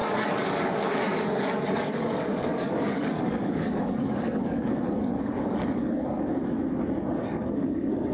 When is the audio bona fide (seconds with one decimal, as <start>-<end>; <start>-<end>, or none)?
6.4-7.2